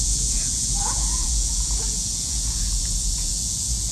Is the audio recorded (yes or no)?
no